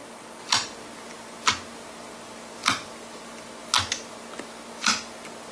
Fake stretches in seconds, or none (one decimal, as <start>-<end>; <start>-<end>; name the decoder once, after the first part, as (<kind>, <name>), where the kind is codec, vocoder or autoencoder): none